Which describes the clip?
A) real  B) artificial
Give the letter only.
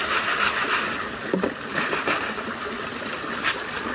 A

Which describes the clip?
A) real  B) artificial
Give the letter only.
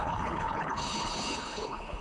B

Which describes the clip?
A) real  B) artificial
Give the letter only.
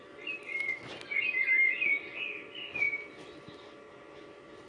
A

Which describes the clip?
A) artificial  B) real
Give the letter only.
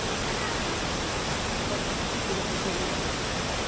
B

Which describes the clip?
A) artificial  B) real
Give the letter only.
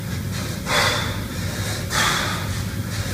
B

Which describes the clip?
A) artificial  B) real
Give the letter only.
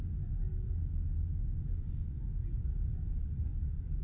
B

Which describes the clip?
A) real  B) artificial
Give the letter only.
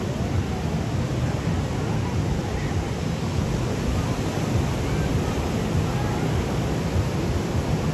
A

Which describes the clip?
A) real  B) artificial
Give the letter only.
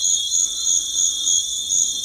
A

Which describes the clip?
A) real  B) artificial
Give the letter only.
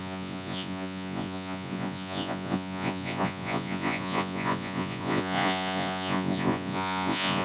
B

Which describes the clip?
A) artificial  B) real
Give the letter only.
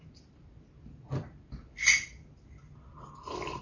A